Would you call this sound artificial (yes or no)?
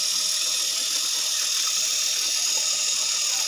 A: no